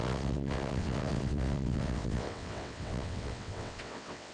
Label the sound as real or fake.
fake